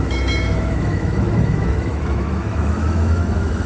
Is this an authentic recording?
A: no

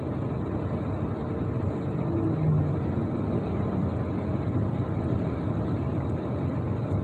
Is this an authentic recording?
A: yes